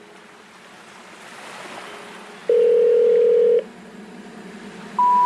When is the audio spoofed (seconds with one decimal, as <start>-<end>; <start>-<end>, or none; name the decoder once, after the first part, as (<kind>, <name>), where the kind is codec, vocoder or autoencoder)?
none